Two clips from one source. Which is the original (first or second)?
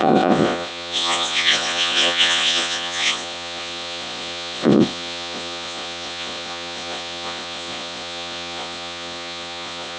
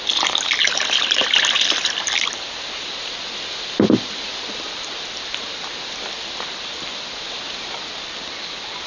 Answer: second